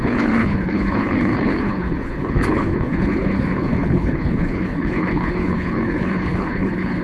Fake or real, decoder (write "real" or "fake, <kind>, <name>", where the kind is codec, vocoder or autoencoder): fake, codec, HILCodec